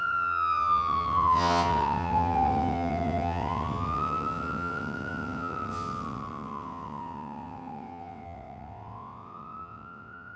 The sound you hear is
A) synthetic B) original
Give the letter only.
A